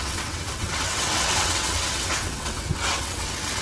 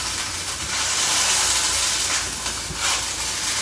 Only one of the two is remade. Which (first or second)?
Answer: first